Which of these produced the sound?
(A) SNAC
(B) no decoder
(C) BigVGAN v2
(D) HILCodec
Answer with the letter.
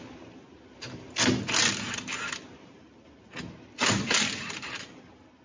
B